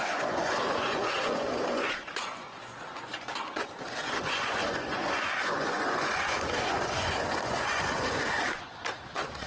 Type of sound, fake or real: fake